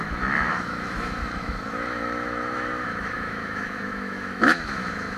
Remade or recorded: remade